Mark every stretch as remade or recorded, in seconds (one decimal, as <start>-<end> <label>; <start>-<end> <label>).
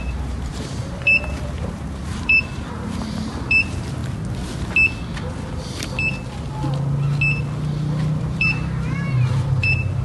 0.0-4.0 remade; 4.0-8.2 recorded; 8.2-10.0 remade